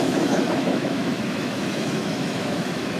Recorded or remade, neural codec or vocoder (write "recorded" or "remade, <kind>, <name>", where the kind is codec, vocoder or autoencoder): remade, autoencoder, DAC-VAE